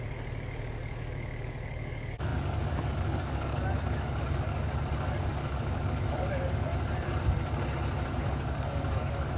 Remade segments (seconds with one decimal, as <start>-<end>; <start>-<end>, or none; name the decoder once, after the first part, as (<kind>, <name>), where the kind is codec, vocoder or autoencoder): 0.0-6.7 (codec, DAC); 8.2-9.4